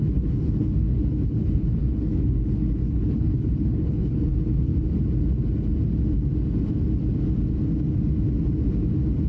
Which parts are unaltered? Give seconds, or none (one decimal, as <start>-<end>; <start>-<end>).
4.7-9.3